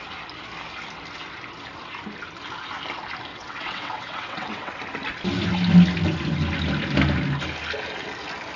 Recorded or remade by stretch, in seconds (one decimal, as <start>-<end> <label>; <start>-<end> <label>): 0.0-3.3 recorded; 3.3-4.7 remade; 4.7-8.6 recorded